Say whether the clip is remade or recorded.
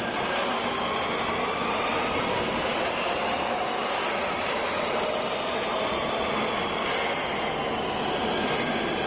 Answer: recorded